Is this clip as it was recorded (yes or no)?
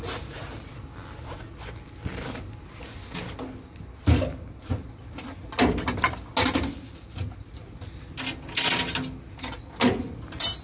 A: yes